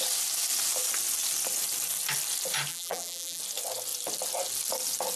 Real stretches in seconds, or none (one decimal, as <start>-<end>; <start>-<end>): 0.0-2.7; 3.4-5.2